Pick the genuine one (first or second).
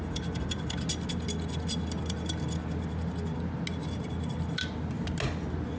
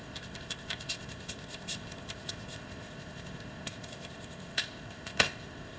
first